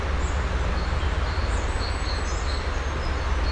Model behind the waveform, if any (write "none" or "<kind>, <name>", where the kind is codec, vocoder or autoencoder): none